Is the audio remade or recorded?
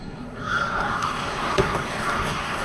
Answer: remade